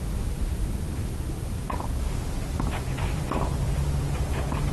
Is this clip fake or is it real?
real